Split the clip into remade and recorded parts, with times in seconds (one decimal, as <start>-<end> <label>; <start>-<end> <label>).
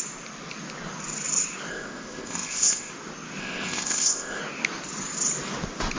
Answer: 0.0-1.7 recorded; 1.7-2.9 remade; 2.9-3.4 recorded; 3.4-4.4 remade; 4.4-6.0 recorded